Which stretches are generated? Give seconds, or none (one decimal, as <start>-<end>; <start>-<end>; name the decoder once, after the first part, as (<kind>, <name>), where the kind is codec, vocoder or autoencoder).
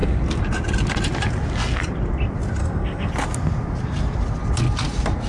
2.6-3.1 (codec, SNAC)